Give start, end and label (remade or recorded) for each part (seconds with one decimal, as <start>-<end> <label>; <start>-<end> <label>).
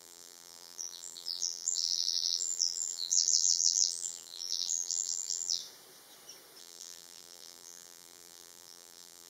0.0-5.6 remade; 5.6-6.6 recorded; 6.6-9.3 remade